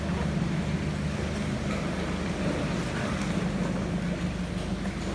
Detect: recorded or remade recorded